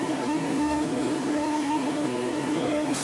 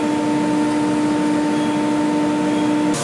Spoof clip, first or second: first